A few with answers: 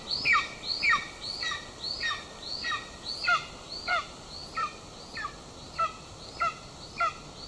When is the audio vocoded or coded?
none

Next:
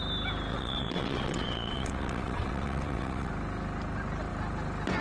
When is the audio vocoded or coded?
0.5-3.3 (vocoder, WaveNeXt)

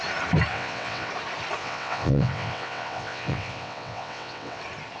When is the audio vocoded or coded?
0.5-1.1 (vocoder, WaveNeXt); 1.6-4.6